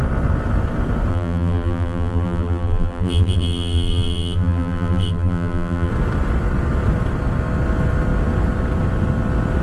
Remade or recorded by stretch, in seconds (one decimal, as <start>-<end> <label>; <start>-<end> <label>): 0.0-1.1 recorded; 1.1-5.9 remade; 5.9-9.6 recorded